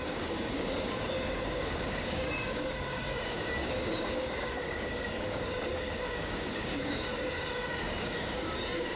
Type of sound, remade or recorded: remade